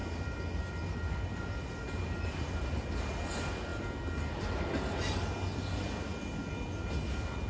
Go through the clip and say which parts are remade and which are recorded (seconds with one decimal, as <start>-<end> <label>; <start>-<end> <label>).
0.0-7.5 recorded